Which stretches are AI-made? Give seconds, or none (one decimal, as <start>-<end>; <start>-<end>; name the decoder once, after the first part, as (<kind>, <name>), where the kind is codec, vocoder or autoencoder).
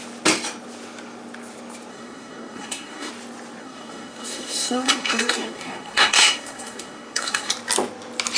1.9-3.1 (codec, SNAC); 3.6-7.5